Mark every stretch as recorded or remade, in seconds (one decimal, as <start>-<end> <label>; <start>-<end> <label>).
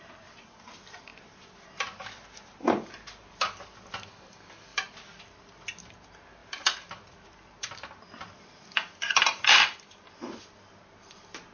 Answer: 0.0-1.1 recorded; 1.1-3.4 remade; 3.4-4.7 recorded; 4.7-5.4 remade; 5.4-6.4 recorded; 6.4-10.4 remade; 10.4-11.5 recorded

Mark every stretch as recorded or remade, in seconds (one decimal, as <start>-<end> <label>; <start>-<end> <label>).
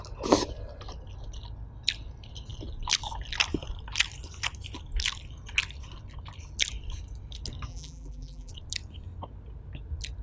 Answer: 0.0-7.7 recorded; 7.7-8.5 remade; 8.5-10.2 recorded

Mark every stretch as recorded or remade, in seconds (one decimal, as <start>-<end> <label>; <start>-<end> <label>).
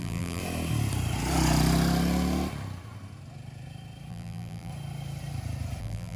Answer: 0.0-0.4 remade; 0.4-4.1 recorded; 4.1-4.7 remade; 4.7-5.8 recorded; 5.8-6.2 remade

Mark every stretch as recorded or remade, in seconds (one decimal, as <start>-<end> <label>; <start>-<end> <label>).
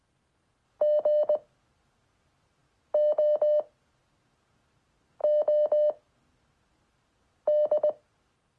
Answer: 0.0-8.6 recorded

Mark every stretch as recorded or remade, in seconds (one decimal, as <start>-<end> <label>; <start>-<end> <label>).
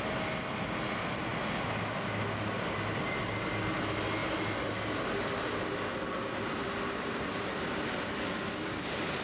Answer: 0.0-9.2 recorded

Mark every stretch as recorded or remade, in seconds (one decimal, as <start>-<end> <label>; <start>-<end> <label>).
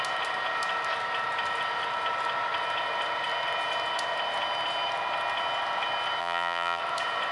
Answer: 0.0-6.2 recorded; 6.2-6.8 remade; 6.8-7.3 recorded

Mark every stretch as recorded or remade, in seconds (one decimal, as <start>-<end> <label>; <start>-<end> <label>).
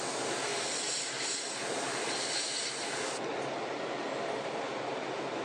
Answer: 0.0-5.4 recorded